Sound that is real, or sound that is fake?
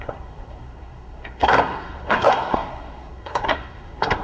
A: fake